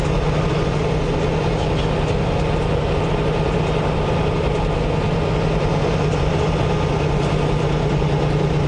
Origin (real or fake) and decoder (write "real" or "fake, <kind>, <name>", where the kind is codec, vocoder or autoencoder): real